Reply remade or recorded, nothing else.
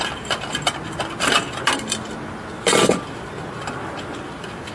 recorded